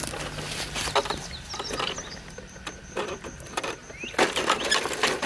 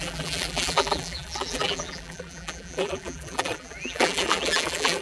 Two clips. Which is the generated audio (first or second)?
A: second